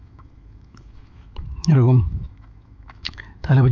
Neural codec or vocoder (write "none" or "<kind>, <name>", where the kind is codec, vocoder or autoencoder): autoencoder, DAC-VAE